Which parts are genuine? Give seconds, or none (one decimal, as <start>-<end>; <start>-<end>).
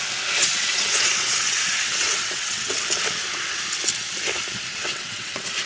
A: 0.0-0.5; 2.7-4.7